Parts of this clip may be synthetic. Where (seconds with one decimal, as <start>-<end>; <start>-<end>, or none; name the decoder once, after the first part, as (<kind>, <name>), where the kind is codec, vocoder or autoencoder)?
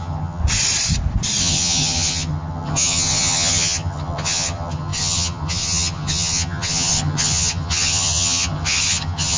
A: 0.0-0.4 (vocoder, HiFi-GAN); 1.4-9.4